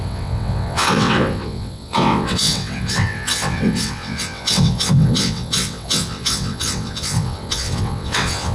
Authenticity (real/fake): fake